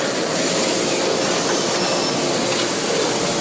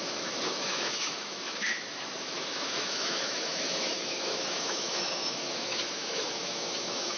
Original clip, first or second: first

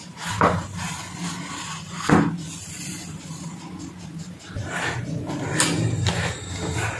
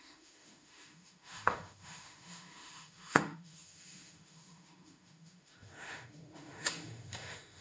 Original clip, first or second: first